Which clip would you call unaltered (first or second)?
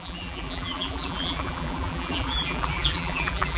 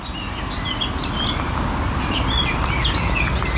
second